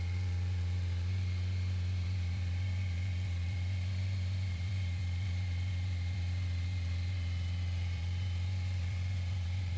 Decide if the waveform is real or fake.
fake